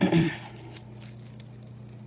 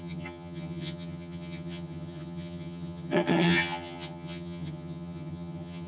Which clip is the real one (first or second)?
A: first